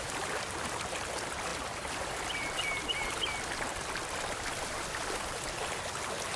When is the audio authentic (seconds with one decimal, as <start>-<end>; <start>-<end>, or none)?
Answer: 0.0-1.5; 2.2-6.4